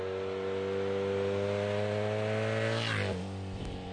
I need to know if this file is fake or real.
real